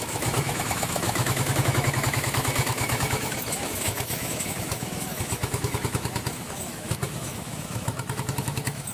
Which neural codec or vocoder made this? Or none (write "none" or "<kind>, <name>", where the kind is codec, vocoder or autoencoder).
autoencoder, DAC-VAE